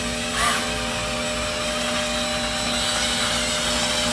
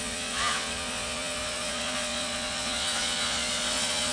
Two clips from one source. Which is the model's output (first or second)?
second